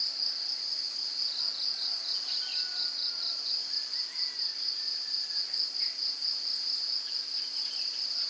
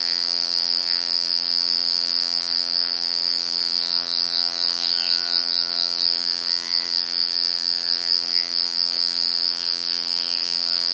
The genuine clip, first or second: first